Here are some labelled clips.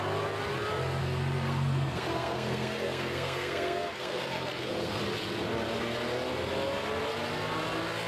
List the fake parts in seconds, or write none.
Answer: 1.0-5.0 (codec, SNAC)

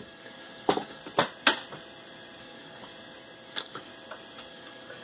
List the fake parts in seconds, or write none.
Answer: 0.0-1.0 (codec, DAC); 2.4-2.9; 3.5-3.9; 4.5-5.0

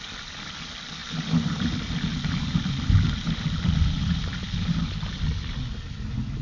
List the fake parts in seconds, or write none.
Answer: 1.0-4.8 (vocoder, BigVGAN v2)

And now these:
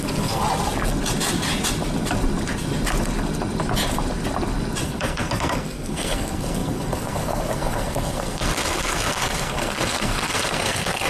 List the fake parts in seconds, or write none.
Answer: 0.0-0.4 (codec, SNAC); 4.8-11.1